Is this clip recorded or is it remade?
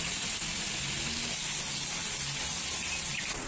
recorded